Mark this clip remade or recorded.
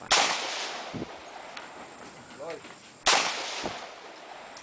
recorded